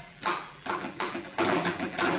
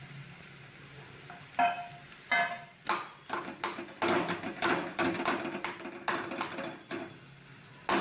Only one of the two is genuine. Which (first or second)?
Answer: second